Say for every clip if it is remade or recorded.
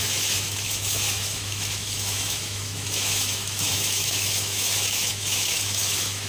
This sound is remade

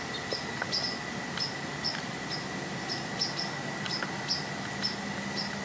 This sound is recorded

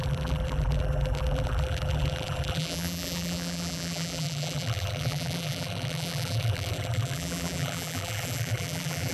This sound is remade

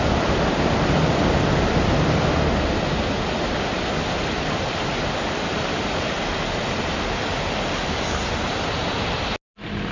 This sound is recorded